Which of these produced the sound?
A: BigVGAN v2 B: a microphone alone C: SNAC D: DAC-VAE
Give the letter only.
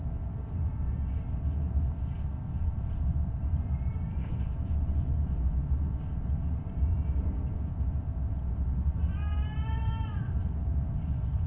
A